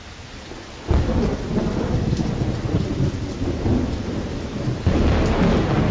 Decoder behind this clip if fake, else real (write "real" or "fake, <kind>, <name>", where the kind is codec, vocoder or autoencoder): real